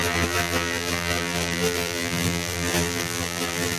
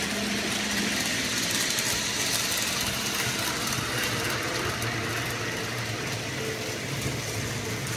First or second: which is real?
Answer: second